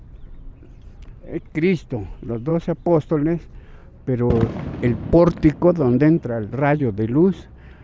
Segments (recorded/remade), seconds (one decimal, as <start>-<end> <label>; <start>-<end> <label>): 0.0-1.3 recorded; 1.3-1.9 remade; 1.9-7.8 recorded